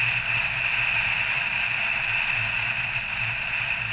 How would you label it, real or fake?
real